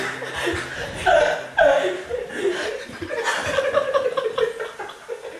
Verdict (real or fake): real